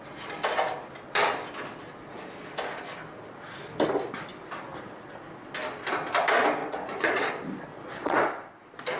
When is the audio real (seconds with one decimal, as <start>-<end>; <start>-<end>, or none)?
0.0-6.6; 7.3-7.7; 8.3-9.0